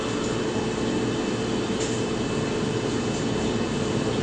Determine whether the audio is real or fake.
real